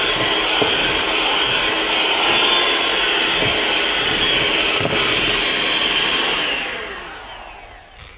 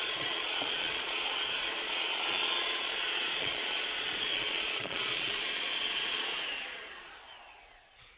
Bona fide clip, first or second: first